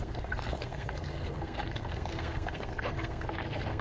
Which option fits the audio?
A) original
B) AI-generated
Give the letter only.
B